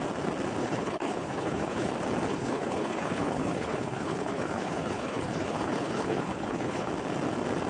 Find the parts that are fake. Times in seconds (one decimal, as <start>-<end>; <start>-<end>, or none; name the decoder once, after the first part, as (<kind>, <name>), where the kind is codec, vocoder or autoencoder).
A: 0.6-1.9 (codec, HILCodec); 2.3-6.9